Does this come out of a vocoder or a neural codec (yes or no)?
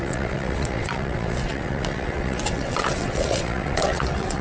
yes